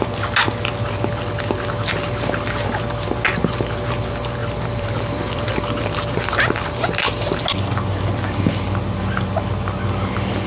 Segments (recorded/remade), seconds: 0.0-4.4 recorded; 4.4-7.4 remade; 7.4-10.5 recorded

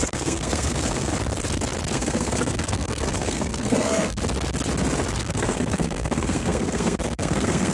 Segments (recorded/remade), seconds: 0.0-1.1 remade; 1.1-1.9 recorded; 1.9-4.2 remade; 4.2-5.2 recorded; 5.2-7.7 remade

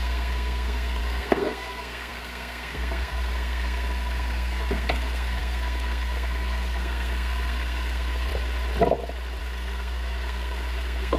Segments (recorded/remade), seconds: 0.0-8.3 remade; 8.3-9.4 recorded; 9.4-11.2 remade

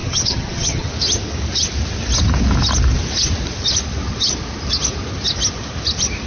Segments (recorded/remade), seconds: 0.0-0.9 remade; 0.9-6.3 recorded

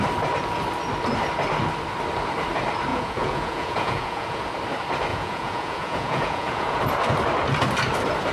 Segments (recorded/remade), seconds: 0.0-2.9 recorded; 2.9-4.5 remade; 4.5-5.1 recorded; 5.1-6.8 remade; 6.8-8.3 recorded

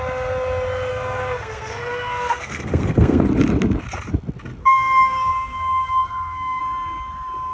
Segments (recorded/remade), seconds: 0.0-0.9 recorded; 0.9-3.2 remade; 3.2-4.6 recorded; 4.6-6.6 remade; 6.6-7.5 recorded